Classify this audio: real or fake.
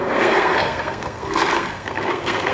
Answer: fake